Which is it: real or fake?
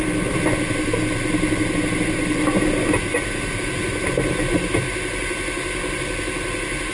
real